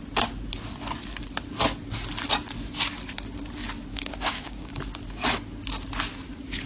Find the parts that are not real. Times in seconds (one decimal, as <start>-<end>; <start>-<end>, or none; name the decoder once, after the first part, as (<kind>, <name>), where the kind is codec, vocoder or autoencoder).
3.9-4.7 (codec, DAC)